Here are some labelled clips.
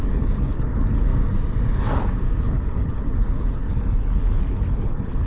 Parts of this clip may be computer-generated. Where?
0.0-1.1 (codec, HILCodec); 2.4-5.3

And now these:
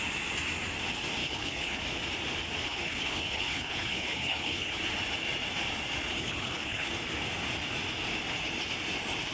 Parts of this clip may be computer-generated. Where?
1.2-1.8 (codec, HILCodec); 2.6-4.8; 6.1-6.9

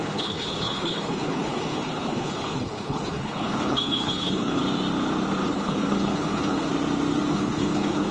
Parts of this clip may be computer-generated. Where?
0.0-4.6 (codec, HILCodec); 5.5-6.7; 7.3-8.1

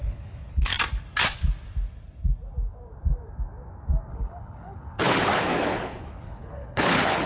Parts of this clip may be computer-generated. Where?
0.0-0.7 (codec, HILCodec); 4.1-7.3

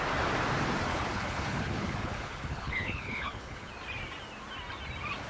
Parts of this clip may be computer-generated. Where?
0.9-3.7 (codec, HILCodec)

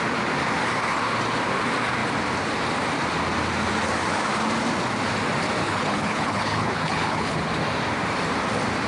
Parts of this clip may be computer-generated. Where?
5.6-7.5 (codec, HILCodec)

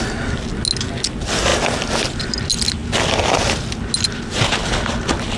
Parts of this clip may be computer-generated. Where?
none